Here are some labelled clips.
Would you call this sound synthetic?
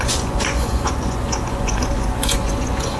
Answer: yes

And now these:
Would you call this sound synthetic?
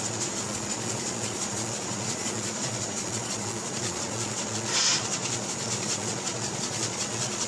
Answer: yes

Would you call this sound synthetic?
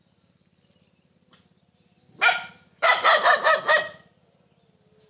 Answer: no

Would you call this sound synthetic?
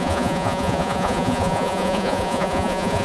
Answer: yes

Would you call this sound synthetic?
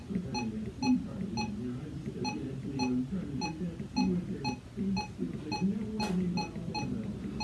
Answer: no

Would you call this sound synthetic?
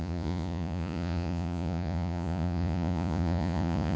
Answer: yes